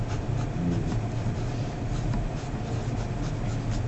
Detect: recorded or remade recorded